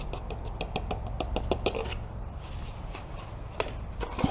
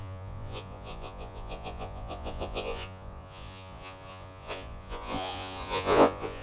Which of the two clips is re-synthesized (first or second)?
second